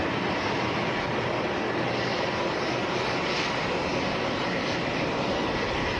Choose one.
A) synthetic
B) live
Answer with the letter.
B